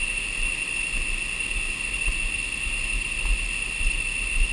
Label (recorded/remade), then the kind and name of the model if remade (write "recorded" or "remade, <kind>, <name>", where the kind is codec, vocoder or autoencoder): recorded